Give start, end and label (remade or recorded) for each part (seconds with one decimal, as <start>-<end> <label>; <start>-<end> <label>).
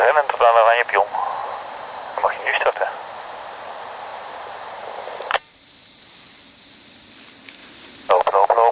0.0-1.4 recorded; 1.4-2.7 remade; 2.7-4.1 recorded; 4.1-6.8 remade; 6.8-7.6 recorded; 7.6-8.1 remade; 8.1-8.7 recorded